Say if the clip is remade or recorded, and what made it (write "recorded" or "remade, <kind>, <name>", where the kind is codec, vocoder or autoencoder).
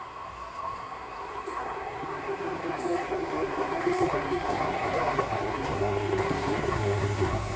remade, codec, SNAC